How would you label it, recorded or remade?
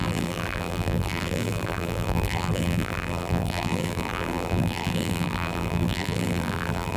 remade